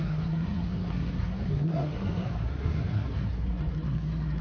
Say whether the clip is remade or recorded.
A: remade